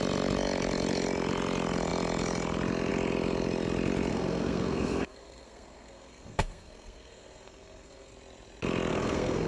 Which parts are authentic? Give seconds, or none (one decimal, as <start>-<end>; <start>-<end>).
0.0-4.1; 8.1-8.9